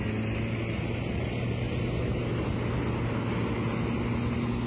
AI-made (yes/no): no